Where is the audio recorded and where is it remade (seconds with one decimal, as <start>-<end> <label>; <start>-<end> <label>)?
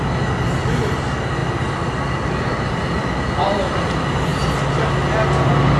0.0-5.8 recorded